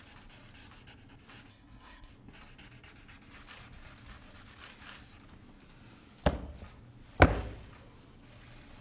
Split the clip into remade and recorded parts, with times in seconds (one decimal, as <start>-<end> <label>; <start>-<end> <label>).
0.0-1.5 recorded; 1.5-2.1 remade; 2.1-8.8 recorded